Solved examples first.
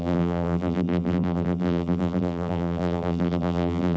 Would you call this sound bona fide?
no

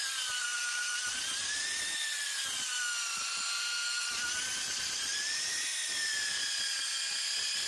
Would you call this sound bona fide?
no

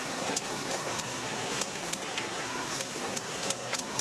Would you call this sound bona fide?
no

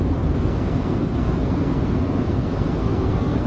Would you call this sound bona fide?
no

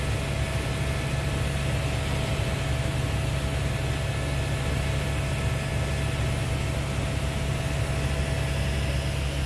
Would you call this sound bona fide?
yes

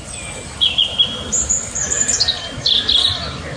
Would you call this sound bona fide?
yes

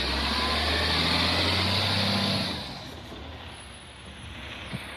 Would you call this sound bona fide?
yes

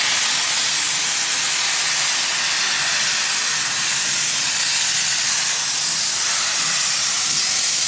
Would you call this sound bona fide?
yes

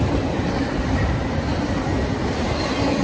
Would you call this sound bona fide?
yes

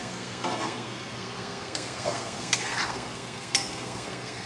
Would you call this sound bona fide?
no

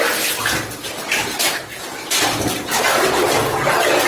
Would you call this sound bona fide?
yes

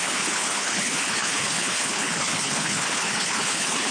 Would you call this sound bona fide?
no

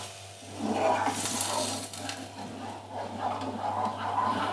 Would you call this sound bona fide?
no